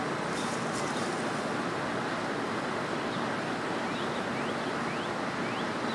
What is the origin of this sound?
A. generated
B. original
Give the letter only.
B